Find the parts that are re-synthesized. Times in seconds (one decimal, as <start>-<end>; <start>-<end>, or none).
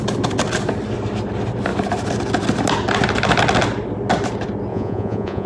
4.7-5.5